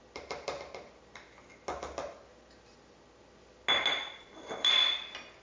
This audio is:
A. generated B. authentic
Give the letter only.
B